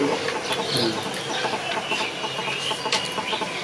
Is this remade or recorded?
recorded